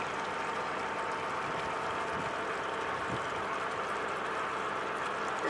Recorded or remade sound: recorded